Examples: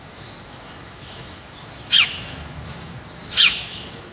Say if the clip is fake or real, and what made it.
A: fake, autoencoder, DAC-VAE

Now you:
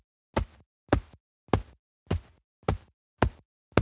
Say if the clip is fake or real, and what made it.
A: real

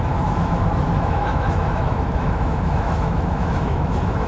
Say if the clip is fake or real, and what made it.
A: fake, autoencoder, DAC-VAE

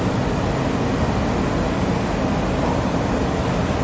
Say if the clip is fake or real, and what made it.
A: real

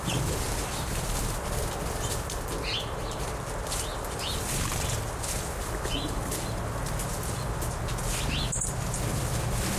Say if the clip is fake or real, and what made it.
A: real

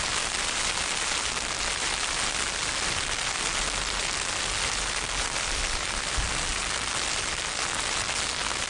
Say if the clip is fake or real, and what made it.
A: real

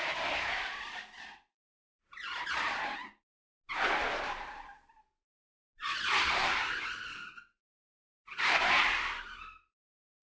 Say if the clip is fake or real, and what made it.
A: real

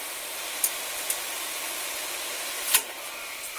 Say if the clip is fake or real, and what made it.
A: real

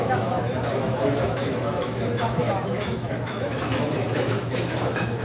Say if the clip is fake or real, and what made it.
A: fake, autoencoder, DAC-VAE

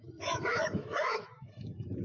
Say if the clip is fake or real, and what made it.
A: fake, autoencoder, DAC-VAE